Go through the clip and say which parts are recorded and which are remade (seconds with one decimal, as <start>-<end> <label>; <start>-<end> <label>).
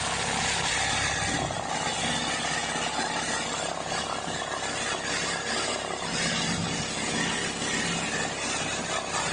0.0-9.3 recorded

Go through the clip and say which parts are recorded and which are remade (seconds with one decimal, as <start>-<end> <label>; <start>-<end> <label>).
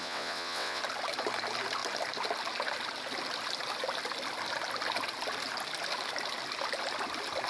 0.0-0.8 remade; 0.8-7.5 recorded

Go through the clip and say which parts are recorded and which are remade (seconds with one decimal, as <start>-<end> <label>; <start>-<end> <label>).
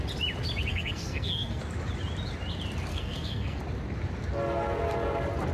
0.0-0.7 recorded; 0.7-1.6 remade; 1.6-2.9 recorded; 2.9-3.6 remade; 3.6-5.5 recorded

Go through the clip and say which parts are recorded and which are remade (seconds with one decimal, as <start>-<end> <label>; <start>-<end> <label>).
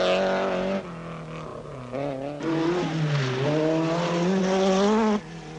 0.0-5.6 recorded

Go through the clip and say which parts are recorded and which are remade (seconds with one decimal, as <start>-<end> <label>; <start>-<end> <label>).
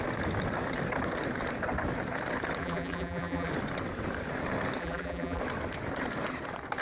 0.0-2.6 recorded; 2.6-3.5 remade; 3.5-4.8 recorded; 4.8-5.4 remade; 5.4-6.8 recorded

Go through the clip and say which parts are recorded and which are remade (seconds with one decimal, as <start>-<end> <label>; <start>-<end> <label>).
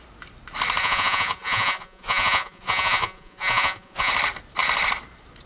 0.0-0.8 recorded; 0.8-4.1 remade; 4.1-5.5 recorded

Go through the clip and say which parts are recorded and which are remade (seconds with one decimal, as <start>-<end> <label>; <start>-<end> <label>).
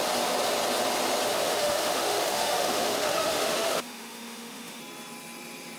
0.0-1.3 recorded; 1.3-4.8 remade; 4.8-5.8 recorded